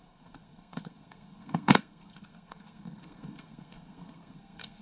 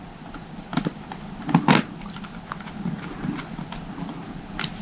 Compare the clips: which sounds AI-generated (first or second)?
first